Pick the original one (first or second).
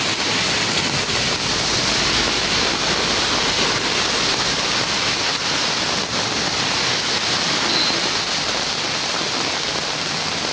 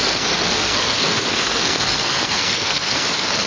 first